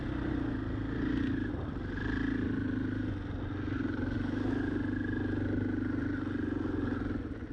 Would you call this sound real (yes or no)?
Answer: yes